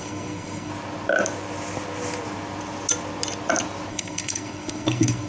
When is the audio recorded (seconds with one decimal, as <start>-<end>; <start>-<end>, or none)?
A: 0.7-3.9